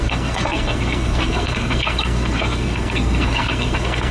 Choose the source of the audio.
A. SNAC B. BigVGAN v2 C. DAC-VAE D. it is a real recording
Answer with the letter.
A